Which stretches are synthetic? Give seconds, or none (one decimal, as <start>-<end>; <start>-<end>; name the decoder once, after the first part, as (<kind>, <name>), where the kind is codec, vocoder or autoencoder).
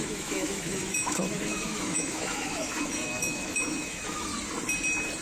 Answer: 0.0-4.3 (autoencoder, DAC-VAE)